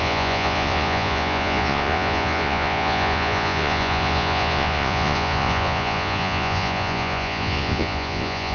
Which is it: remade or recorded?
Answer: remade